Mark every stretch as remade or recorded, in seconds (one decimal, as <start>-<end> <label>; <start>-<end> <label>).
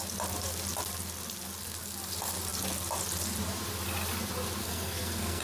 0.0-4.6 recorded; 4.6-5.4 remade